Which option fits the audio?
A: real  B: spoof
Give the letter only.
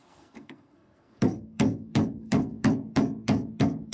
B